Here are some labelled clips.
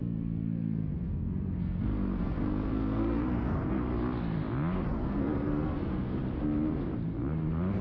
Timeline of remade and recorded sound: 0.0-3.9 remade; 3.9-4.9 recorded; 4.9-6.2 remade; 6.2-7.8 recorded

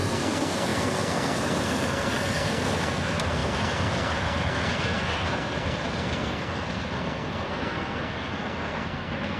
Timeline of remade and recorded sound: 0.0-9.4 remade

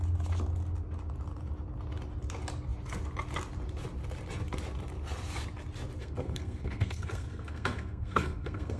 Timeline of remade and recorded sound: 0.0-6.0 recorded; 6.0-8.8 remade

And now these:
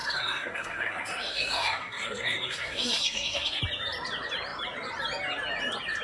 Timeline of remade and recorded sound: 0.0-3.6 remade; 3.6-6.0 recorded

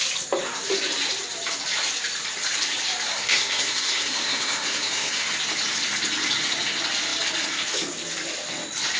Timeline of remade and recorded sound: 0.0-3.1 recorded; 3.1-5.3 remade; 5.3-9.0 recorded

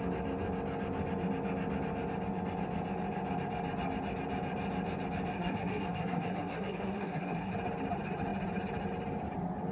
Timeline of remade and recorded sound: 0.0-5.3 recorded; 5.3-7.5 remade; 7.5-9.7 recorded

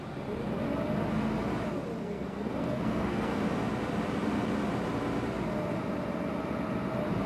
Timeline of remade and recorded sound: 0.0-2.0 recorded; 2.0-3.4 remade; 3.4-7.3 recorded